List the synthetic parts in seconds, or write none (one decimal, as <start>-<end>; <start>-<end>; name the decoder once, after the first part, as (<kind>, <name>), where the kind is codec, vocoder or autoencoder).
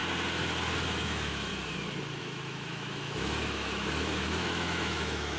0.9-1.5 (autoencoder, DAC-VAE); 2.2-5.4